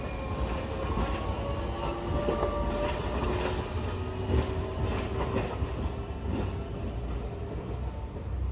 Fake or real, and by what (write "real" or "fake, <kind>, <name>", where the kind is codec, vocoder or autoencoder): real